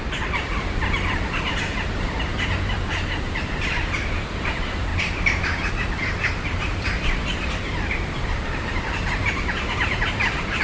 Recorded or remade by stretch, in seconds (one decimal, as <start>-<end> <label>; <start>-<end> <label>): 0.0-10.6 remade